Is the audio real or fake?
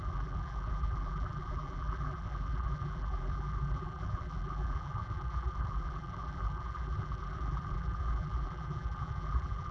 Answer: fake